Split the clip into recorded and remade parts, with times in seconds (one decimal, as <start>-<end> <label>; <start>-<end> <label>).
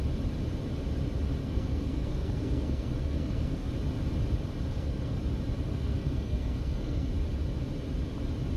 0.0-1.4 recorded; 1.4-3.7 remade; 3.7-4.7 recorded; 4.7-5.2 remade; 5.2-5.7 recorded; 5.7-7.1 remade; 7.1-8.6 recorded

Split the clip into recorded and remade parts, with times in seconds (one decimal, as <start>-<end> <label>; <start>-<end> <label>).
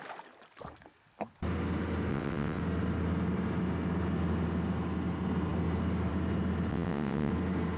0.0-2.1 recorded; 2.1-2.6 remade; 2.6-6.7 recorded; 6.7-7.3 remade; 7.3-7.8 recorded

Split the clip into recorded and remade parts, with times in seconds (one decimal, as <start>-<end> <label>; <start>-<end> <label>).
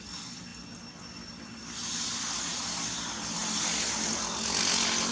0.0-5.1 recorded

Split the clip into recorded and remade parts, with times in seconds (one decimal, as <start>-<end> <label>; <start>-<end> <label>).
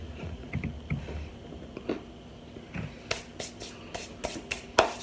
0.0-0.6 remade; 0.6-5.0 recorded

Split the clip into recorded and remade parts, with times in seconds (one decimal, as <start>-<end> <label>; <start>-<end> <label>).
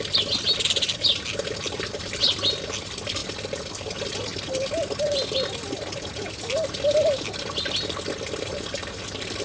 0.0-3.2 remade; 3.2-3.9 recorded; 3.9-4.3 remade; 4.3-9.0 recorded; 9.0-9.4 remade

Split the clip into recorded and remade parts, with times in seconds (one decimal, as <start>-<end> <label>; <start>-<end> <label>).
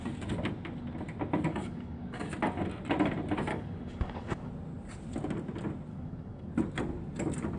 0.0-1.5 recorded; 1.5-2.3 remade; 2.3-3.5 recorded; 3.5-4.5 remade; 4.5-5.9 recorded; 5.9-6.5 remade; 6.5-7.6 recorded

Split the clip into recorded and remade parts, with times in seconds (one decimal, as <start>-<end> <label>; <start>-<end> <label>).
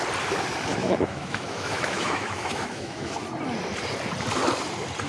0.0-0.8 recorded; 0.8-3.1 remade; 3.1-5.1 recorded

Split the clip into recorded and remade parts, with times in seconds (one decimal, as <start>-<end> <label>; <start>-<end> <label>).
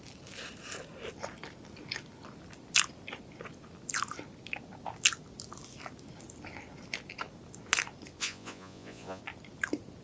0.0-8.2 recorded; 8.2-9.2 remade; 9.2-10.0 recorded